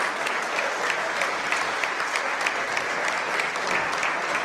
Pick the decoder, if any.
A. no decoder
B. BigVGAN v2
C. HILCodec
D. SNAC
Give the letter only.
A